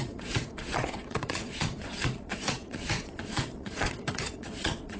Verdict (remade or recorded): remade